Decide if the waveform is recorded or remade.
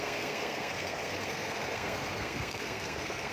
remade